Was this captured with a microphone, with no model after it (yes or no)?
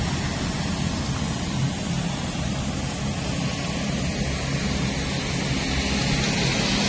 yes